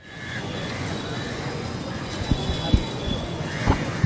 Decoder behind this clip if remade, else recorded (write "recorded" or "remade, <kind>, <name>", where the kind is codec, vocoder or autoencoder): remade, vocoder, Vocos